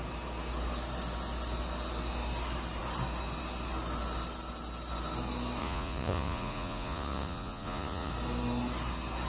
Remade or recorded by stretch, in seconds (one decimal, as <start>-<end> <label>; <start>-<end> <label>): 0.0-5.6 recorded; 5.6-8.1 remade; 8.1-9.3 recorded